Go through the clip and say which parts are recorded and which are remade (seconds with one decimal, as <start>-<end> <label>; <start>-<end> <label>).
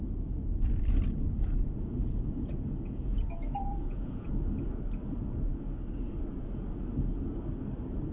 0.0-2.0 recorded; 2.0-4.3 remade; 4.3-8.1 recorded